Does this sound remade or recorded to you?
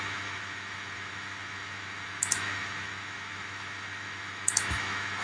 remade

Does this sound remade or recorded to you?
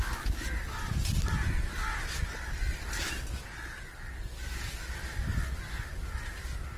recorded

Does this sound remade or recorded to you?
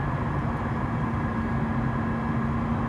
recorded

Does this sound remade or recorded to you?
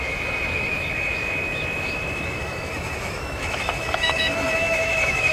remade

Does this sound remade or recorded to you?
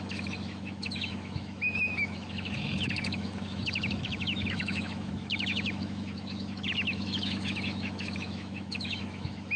remade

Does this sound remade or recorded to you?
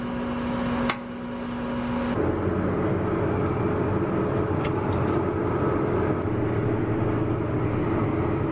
recorded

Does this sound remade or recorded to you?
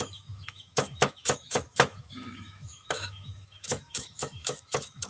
remade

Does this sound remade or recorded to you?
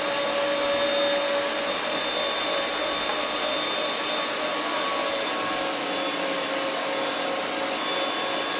recorded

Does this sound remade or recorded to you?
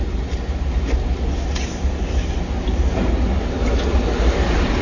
recorded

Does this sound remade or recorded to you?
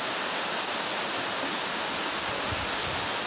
recorded